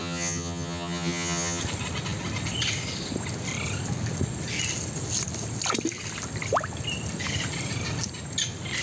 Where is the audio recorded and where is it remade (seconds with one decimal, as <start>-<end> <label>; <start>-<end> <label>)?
0.0-1.6 remade; 1.6-8.8 recorded